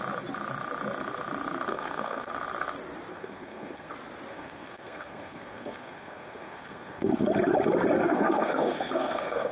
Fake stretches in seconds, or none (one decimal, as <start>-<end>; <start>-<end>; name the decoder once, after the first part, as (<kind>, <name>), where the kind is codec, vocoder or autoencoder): 1.7-2.3 (codec, SNAC); 3.1-3.9; 4.3-7.1; 8.0-9.5